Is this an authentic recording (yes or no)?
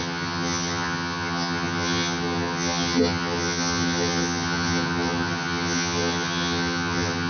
no